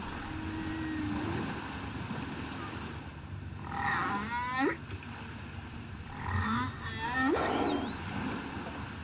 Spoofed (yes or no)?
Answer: no